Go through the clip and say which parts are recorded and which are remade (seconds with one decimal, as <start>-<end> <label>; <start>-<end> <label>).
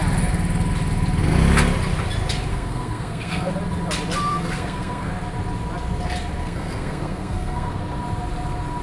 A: 0.0-2.5 recorded; 2.5-3.5 remade; 3.5-4.3 recorded; 4.3-5.1 remade; 5.1-6.4 recorded; 6.4-7.8 remade; 7.8-8.8 recorded